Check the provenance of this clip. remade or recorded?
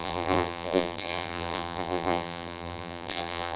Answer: remade